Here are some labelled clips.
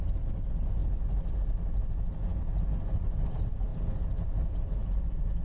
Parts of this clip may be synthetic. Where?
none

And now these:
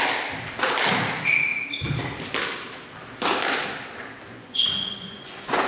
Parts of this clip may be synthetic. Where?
4.3-5.7 (vocoder, Vocos)

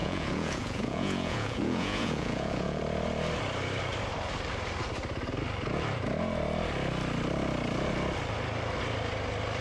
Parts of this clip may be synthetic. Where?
0.0-2.8 (vocoder, Vocos)

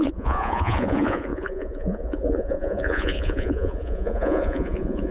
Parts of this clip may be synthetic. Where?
0.0-5.1 (vocoder, Vocos)

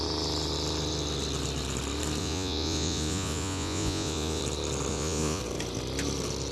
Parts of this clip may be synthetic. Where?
2.2-4.4 (vocoder, Vocos); 4.9-5.4

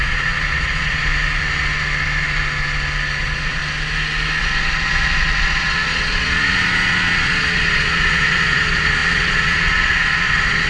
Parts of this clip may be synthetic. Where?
0.0-1.1 (vocoder, Vocos); 3.2-3.6; 4.4-10.7

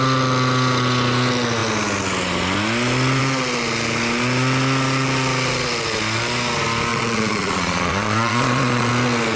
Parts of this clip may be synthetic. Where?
6.9-8.9 (vocoder, Vocos)

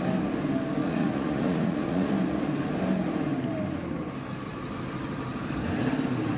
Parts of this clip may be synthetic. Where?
0.8-2.1 (vocoder, Vocos)